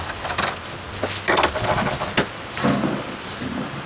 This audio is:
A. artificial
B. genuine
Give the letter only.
B